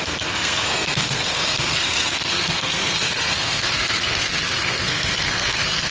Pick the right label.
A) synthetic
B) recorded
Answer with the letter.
A